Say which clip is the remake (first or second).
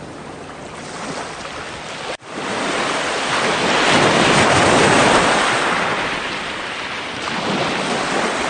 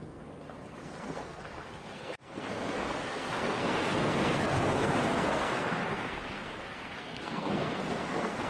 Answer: second